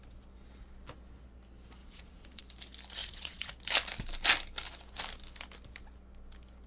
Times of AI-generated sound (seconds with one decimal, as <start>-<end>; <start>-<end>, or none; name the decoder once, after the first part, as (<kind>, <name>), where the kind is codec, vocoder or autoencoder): 1.8-2.4 (vocoder, Vocos); 3.0-3.5